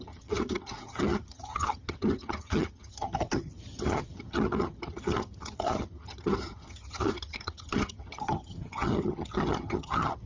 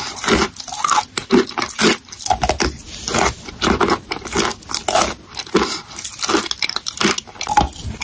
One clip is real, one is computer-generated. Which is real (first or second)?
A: second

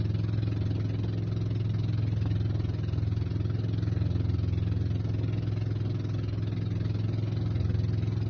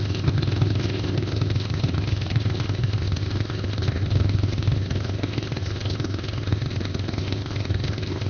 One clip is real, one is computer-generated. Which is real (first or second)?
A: first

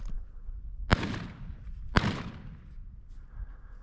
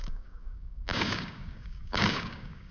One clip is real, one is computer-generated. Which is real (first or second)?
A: first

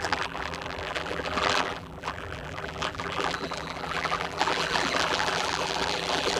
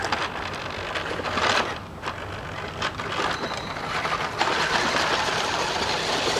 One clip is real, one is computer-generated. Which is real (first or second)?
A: second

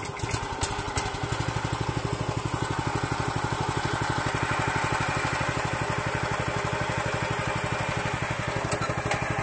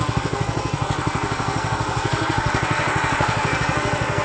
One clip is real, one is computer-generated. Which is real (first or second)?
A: first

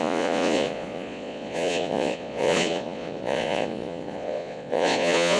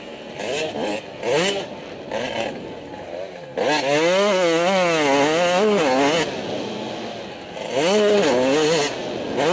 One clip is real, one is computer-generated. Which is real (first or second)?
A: second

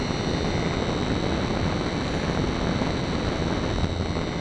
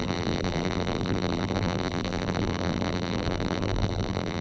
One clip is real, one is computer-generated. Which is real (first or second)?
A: first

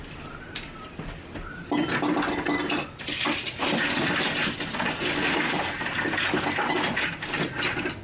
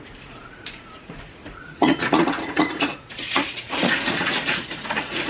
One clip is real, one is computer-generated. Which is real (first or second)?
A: first